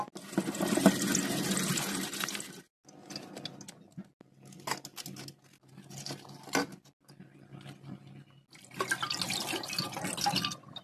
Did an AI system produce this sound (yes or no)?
no